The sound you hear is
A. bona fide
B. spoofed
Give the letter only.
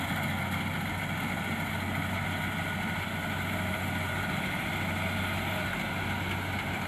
A